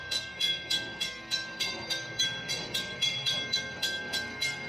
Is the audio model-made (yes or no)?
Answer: yes